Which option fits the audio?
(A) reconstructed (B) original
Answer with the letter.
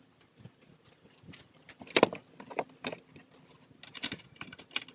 B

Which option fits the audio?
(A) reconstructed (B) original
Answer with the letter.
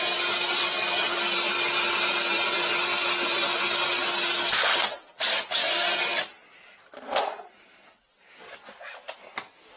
B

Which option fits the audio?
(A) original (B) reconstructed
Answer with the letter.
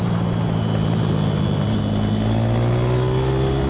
A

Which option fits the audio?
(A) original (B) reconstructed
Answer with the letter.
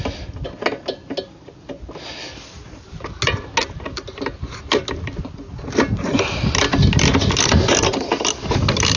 A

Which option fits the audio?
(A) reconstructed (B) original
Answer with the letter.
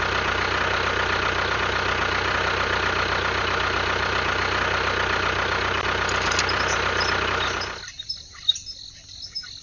B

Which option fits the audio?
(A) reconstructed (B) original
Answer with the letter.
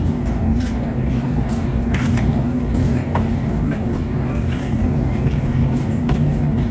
A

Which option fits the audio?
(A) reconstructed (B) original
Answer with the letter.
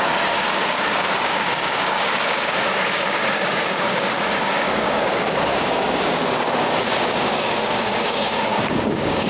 A